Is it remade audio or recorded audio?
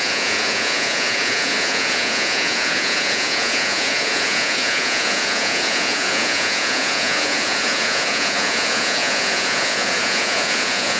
remade